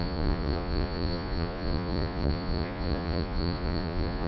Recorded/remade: remade